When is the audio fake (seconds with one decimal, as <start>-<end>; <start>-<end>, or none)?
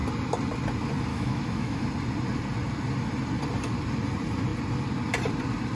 1.1-1.8